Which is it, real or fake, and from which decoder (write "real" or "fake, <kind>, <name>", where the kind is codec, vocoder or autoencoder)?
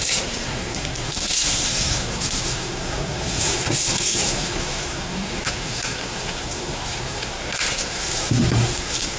fake, codec, SNAC